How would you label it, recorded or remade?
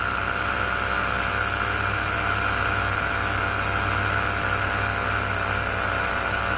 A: recorded